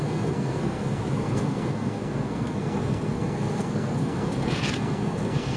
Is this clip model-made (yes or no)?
yes